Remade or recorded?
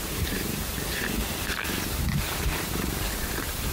remade